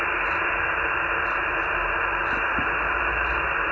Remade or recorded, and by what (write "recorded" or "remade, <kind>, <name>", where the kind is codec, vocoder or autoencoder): recorded